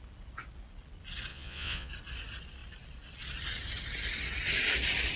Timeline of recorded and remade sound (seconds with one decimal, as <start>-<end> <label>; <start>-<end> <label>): 0.0-1.3 recorded; 1.3-1.9 remade; 1.9-5.2 recorded